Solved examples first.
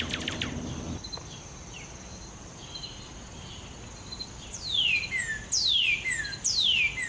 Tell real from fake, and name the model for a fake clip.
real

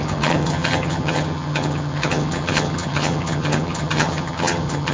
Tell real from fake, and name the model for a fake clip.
fake, vocoder, HiFi-GAN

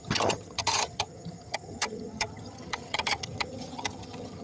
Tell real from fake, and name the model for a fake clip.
fake, vocoder, HiFi-GAN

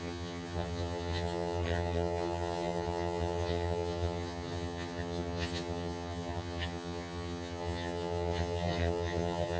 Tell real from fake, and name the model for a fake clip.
fake, vocoder, HiFi-GAN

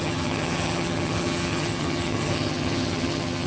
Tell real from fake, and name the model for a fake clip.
fake, vocoder, HiFi-GAN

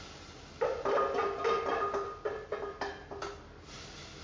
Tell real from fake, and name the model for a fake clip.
real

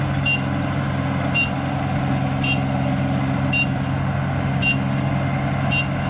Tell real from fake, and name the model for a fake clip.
real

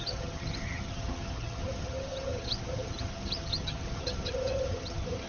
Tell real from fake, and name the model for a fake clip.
fake, vocoder, HiFi-GAN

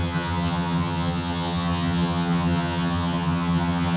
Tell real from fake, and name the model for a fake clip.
fake, vocoder, HiFi-GAN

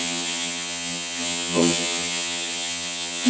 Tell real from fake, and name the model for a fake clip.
fake, vocoder, HiFi-GAN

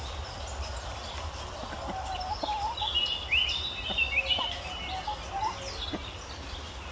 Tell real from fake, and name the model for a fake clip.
real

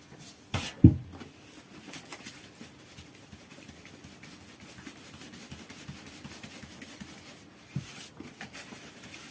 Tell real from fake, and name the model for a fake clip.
real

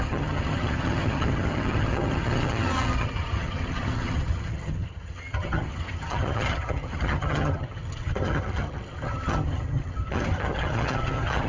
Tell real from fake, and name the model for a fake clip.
fake, vocoder, HiFi-GAN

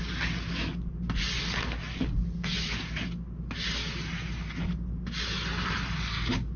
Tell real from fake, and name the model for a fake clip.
real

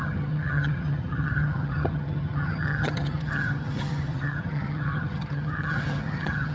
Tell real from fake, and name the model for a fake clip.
fake, vocoder, HiFi-GAN